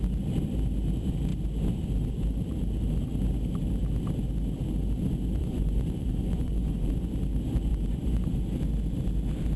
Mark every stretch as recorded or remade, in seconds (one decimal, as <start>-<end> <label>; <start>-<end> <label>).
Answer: 0.0-5.4 recorded; 5.4-6.9 remade; 6.9-7.7 recorded; 7.7-8.4 remade; 8.4-9.6 recorded